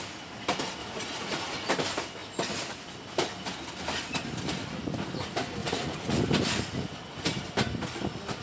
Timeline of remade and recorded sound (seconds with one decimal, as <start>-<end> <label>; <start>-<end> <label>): 0.0-0.8 recorded; 0.8-1.7 remade; 1.7-5.6 recorded; 5.6-6.2 remade; 6.2-8.4 recorded